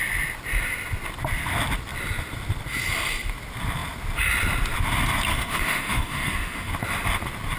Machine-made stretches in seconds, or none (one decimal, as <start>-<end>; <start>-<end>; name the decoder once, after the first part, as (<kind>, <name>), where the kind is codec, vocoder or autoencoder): 5.3-6.7 (autoencoder, DAC-VAE)